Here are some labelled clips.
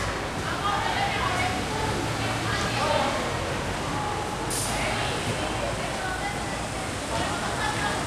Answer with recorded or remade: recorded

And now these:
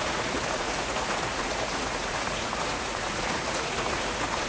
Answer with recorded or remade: remade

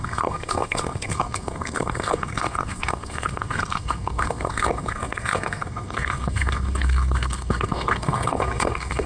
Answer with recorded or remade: remade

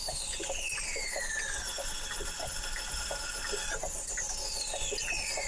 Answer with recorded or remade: recorded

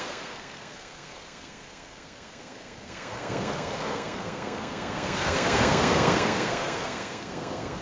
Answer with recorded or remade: remade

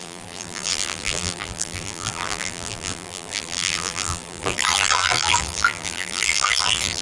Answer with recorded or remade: remade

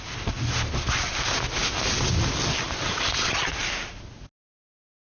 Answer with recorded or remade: recorded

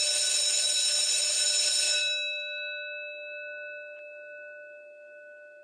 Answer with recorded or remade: recorded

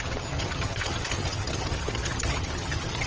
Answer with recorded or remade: remade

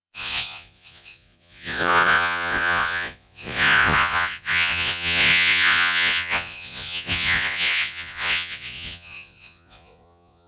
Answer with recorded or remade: remade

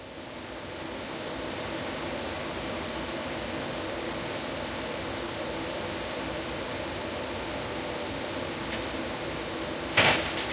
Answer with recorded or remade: recorded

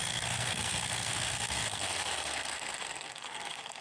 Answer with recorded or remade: remade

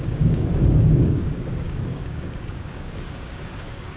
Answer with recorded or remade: remade